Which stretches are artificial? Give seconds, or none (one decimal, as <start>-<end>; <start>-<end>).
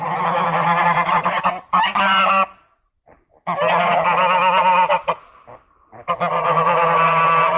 0.0-2.4; 6.4-7.6